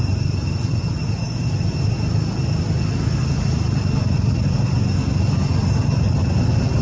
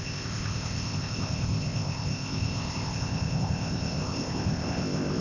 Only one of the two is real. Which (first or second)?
first